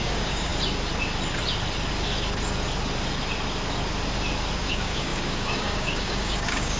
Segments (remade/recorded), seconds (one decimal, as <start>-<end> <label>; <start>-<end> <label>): 0.0-0.5 remade; 0.5-4.6 recorded; 4.6-6.8 remade